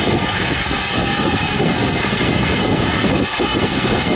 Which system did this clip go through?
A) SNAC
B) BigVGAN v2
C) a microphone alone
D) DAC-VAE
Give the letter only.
A